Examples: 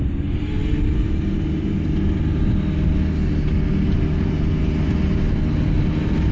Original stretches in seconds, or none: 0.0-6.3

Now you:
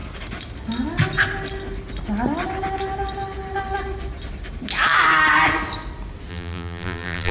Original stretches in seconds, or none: 0.0-6.3

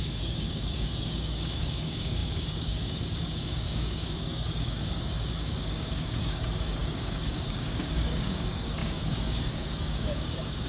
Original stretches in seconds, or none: none

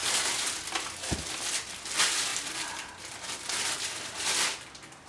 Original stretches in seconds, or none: 0.0-5.1

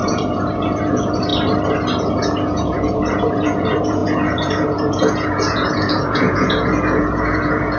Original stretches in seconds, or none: 1.3-1.9

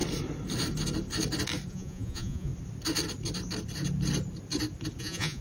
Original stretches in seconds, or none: 0.0-1.7; 2.5-5.0

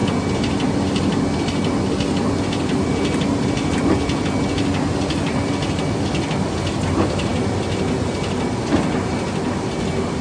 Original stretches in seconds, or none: 0.0-10.2